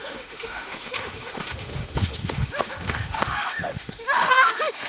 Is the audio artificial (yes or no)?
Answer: yes